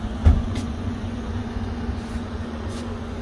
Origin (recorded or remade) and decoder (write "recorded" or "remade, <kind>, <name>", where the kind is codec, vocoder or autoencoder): remade, vocoder, Vocos